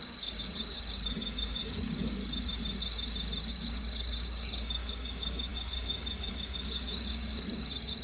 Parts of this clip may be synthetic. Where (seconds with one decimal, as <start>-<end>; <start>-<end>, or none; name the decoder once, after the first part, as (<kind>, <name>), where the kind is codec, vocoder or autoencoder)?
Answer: 0.0-2.2 (codec, DAC); 3.5-8.0